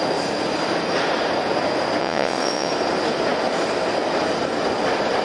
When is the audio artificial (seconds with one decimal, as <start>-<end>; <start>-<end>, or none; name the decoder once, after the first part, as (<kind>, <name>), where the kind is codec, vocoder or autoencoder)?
2.0-2.7 (vocoder, WaveNeXt)